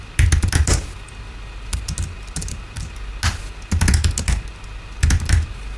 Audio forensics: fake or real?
real